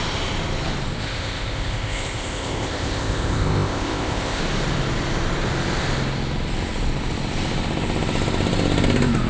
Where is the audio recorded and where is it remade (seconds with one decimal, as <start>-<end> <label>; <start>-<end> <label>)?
0.0-1.0 recorded; 1.0-4.4 remade; 4.4-9.3 recorded

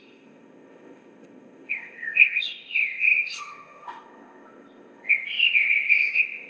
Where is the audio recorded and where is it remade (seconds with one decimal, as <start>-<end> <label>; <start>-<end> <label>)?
0.0-6.5 remade